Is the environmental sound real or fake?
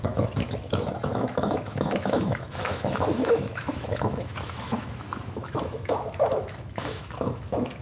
fake